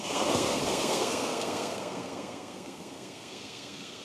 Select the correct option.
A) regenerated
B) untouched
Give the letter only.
A